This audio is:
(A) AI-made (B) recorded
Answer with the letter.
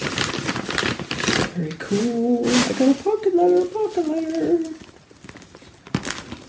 B